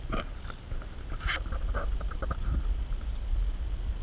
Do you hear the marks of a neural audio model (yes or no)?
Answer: no